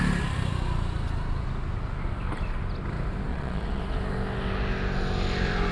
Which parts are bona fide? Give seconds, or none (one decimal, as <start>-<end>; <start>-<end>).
0.0-3.3; 3.8-5.7